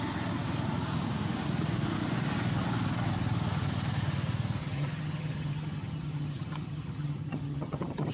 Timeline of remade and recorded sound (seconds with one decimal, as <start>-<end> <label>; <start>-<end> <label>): 0.0-4.6 recorded; 4.6-8.1 remade